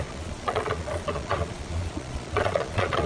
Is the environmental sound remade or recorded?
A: remade